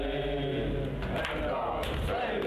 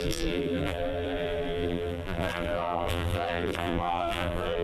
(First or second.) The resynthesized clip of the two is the second